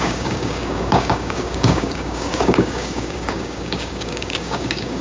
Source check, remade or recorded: remade